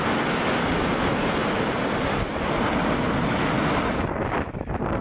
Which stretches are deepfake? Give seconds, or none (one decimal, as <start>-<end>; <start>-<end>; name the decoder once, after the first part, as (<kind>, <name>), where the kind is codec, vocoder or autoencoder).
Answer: none